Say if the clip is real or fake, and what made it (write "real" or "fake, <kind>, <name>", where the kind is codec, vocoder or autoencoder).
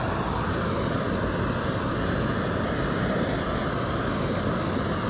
real